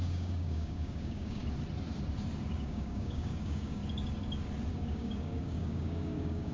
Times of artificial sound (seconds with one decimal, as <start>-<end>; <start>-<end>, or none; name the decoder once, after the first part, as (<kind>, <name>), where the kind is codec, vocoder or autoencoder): 0.0-1.4 (codec, DAC); 2.5-3.8; 4.7-6.5